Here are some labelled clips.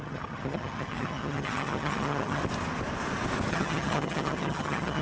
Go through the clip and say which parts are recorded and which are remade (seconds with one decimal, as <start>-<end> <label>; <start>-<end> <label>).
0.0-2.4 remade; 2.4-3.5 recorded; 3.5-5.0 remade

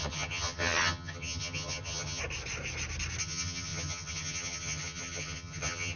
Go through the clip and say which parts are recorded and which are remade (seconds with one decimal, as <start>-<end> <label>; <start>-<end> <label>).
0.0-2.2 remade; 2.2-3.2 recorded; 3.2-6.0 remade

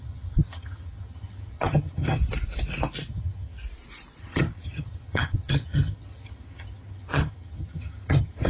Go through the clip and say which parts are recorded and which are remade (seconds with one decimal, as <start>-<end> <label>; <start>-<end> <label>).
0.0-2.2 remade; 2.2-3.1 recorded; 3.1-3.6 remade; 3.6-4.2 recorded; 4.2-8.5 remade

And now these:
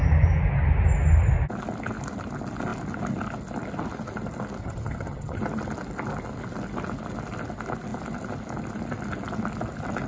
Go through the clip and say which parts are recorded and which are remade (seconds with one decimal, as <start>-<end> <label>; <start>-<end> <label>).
0.0-4.6 recorded; 4.6-5.4 remade; 5.4-10.1 recorded

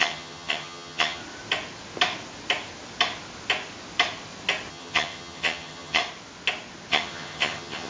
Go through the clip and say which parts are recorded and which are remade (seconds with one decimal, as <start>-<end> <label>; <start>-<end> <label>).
0.0-1.2 remade; 1.2-4.7 recorded; 4.7-6.0 remade; 6.0-6.9 recorded; 6.9-7.9 remade